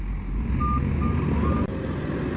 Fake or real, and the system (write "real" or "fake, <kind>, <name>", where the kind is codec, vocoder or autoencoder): real